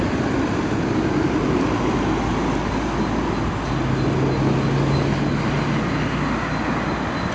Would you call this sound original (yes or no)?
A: yes